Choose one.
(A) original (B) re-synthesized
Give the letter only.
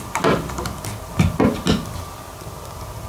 A